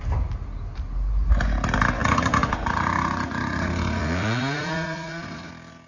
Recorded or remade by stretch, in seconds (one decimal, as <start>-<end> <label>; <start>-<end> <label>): 0.0-2.0 recorded; 2.0-5.5 remade; 5.5-5.9 recorded